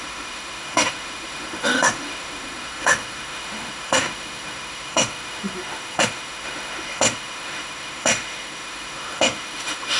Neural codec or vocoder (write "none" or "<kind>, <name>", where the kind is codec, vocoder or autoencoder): autoencoder, DAC-VAE